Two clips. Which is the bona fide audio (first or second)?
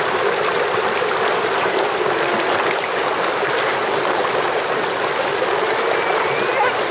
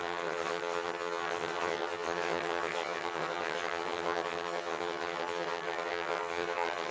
first